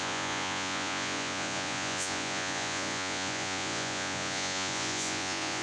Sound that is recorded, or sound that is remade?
remade